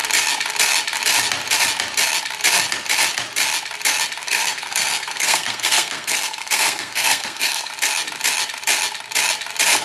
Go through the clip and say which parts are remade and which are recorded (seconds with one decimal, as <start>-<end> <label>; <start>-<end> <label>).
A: 0.0-4.2 recorded; 4.2-7.7 remade; 7.7-9.8 recorded